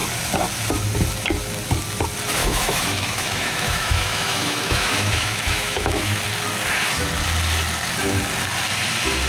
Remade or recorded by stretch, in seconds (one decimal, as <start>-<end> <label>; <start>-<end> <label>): 0.0-2.4 recorded; 2.4-6.2 remade; 6.2-9.3 recorded